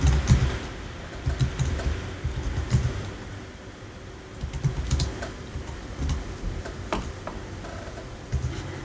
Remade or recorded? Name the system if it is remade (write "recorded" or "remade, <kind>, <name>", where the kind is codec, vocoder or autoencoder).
recorded